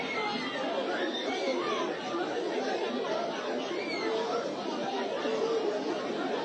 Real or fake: real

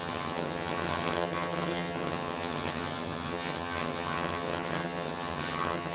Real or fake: fake